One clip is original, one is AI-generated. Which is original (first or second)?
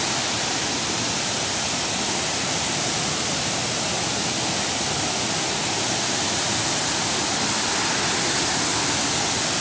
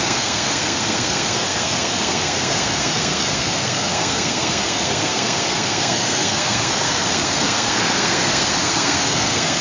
first